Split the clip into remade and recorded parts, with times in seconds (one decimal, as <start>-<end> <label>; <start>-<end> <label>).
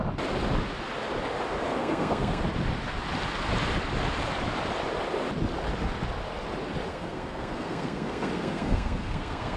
0.0-1.8 recorded; 1.8-2.4 remade; 2.4-6.9 recorded; 6.9-9.6 remade